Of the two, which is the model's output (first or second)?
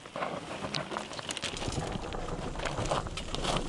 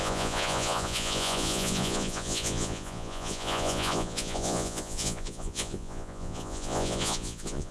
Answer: second